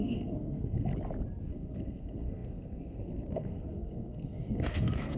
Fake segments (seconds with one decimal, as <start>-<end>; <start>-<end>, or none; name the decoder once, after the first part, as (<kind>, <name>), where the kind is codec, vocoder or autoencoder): 0.0-0.9 (codec, SNAC); 1.5-5.2